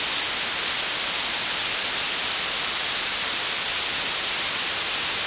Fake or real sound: real